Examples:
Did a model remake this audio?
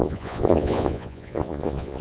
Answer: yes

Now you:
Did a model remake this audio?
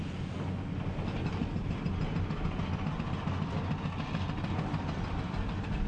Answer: no